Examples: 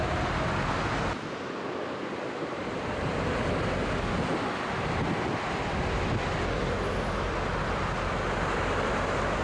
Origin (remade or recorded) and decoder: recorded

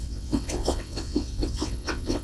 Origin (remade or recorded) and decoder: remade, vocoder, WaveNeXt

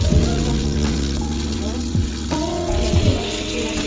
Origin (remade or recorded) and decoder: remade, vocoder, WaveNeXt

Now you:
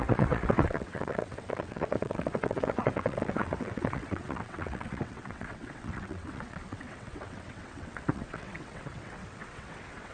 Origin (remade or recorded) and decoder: remade, vocoder, WaveNeXt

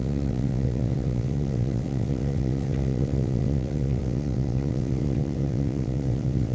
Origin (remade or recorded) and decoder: remade, vocoder, WaveNeXt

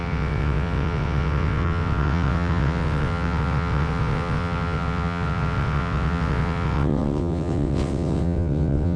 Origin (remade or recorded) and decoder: remade, vocoder, WaveNeXt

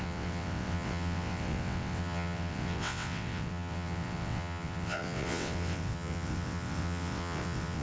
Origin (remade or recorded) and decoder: remade, vocoder, WaveNeXt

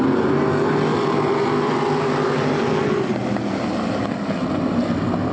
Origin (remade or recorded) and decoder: recorded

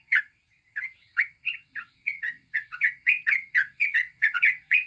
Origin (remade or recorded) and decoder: remade, vocoder, WaveNeXt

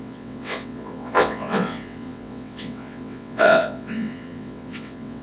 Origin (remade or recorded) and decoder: remade, vocoder, WaveNeXt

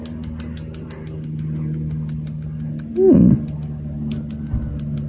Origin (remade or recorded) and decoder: recorded